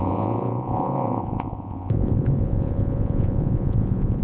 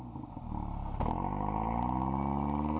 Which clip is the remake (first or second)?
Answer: first